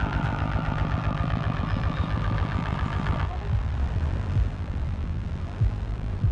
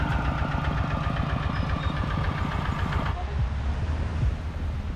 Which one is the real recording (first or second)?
second